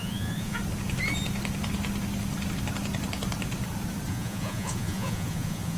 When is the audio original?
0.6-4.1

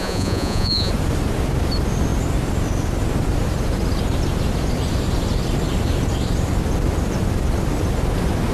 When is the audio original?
0.9-8.5

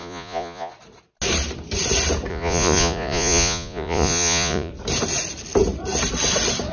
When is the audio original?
0.7-2.3; 4.7-6.7

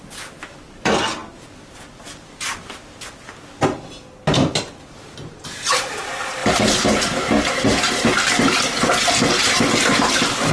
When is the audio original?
0.0-10.5

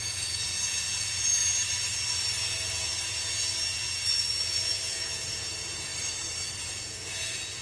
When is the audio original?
1.4-2.4; 5.9-6.6

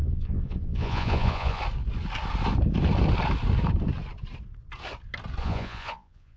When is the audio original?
1.6-5.4

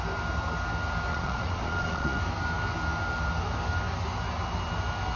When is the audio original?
0.0-1.1; 2.2-5.2

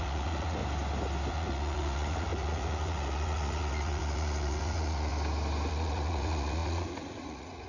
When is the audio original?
0.6-1.3; 5.1-5.7